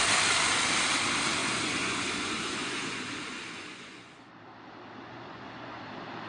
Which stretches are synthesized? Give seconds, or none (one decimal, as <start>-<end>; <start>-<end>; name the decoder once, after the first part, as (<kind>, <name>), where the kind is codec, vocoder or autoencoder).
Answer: 1.4-4.3 (vocoder, Vocos); 5.0-5.8